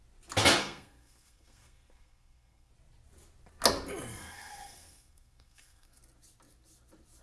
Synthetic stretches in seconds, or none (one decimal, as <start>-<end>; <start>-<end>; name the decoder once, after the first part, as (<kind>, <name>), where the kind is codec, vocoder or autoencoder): 0.6-2.7 (codec, SNAC); 4.2-6.0